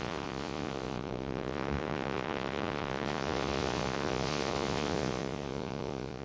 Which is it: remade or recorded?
remade